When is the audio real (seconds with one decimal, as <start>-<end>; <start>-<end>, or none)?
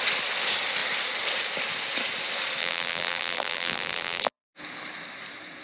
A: 0.0-2.6; 4.5-5.6